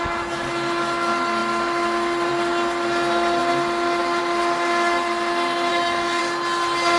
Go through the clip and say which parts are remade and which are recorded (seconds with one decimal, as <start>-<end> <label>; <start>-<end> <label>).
0.0-5.7 recorded; 5.7-6.2 remade; 6.2-7.0 recorded